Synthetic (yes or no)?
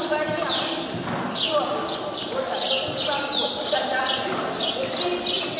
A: no